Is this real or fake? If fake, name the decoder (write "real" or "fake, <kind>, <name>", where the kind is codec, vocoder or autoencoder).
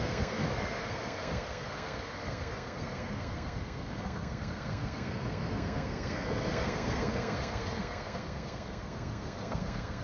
fake, codec, SNAC